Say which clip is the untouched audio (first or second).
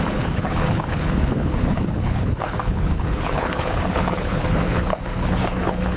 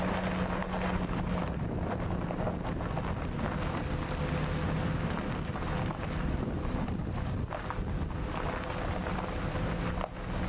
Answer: second